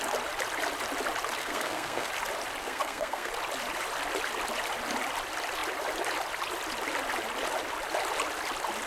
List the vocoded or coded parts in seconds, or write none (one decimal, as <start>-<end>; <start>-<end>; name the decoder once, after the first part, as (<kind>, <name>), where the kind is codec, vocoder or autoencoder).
1.4-2.1 (codec, SNAC); 2.6-3.3